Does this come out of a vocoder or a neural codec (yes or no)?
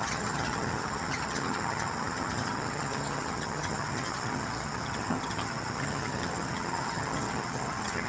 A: yes